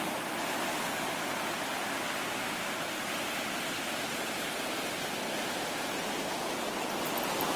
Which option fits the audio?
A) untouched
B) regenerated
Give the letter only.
A